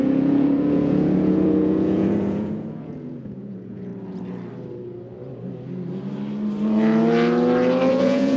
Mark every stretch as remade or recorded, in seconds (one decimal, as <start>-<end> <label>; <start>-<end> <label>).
0.0-3.9 remade; 3.9-7.9 recorded; 7.9-8.4 remade